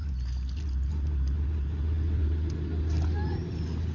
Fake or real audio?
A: real